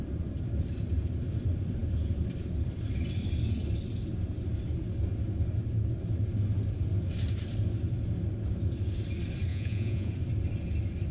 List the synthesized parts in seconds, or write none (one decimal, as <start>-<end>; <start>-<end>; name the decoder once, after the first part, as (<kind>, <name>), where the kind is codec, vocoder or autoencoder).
9.5-10.1 (vocoder, Vocos)